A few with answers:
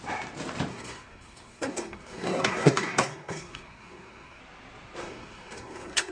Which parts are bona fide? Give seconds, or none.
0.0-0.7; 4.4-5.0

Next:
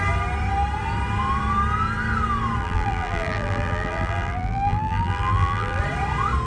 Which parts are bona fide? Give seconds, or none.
0.0-2.6; 5.8-6.5

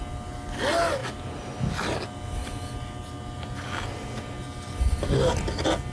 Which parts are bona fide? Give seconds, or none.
0.0-1.0; 1.7-5.9

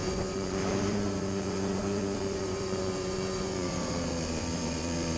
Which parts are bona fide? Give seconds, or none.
none

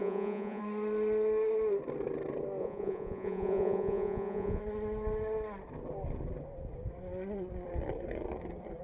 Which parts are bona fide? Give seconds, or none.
0.6-2.6; 4.6-8.8